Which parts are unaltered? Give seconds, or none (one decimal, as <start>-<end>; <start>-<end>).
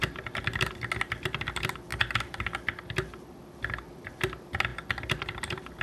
0.0-5.8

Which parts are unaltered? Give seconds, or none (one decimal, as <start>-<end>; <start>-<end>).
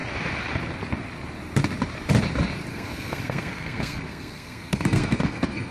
0.0-2.7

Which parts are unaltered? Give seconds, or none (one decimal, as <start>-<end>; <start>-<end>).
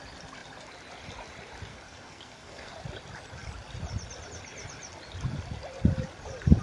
0.0-1.7; 2.7-6.6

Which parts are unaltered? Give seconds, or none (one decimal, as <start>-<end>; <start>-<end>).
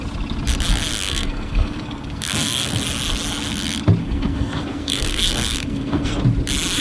0.0-0.9; 2.7-4.0; 6.2-6.8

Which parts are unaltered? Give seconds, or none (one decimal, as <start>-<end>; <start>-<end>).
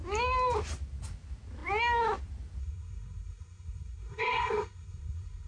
0.0-2.6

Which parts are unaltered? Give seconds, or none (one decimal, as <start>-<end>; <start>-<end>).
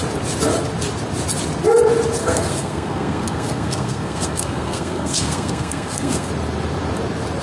0.0-2.2; 6.3-7.4